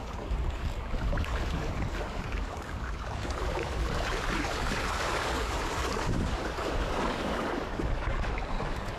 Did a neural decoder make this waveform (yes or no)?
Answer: yes